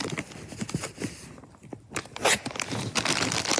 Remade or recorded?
recorded